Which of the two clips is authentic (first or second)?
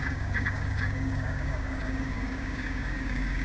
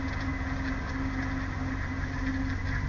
second